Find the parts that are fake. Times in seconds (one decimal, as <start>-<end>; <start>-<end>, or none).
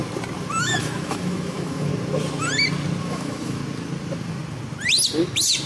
0.6-1.9; 3.0-3.6